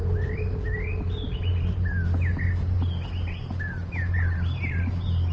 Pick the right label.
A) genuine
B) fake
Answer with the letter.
A